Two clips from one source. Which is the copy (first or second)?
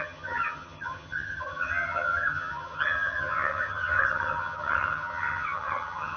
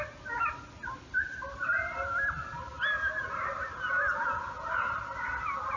first